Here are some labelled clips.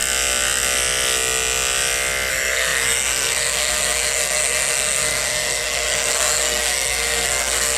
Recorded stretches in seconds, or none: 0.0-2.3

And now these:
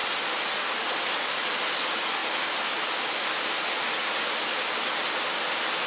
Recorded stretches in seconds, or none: 0.0-5.9

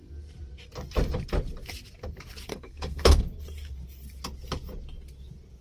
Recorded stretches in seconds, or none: 0.0-2.5; 3.2-5.6

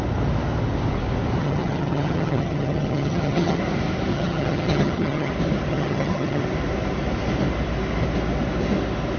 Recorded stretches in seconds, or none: 0.0-1.4; 3.6-4.1; 5.3-5.7; 6.4-9.2

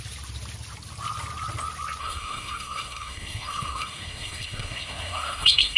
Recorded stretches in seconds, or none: 0.0-2.0

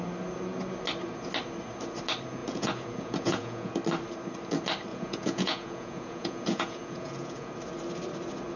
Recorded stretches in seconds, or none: 0.0-2.4; 3.7-4.9; 7.5-8.6

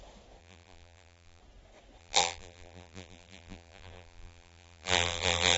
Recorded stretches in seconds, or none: 0.0-0.4; 1.4-2.0

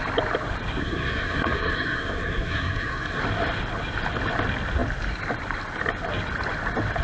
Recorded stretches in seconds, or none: 0.0-0.8; 3.2-7.0